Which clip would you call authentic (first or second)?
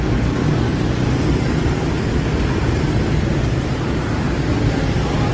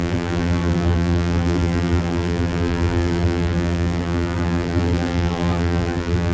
first